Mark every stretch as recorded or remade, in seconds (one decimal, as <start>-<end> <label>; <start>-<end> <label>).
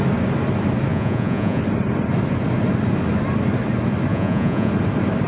0.0-0.9 recorded; 0.9-1.6 remade; 1.6-4.1 recorded; 4.1-4.7 remade; 4.7-5.3 recorded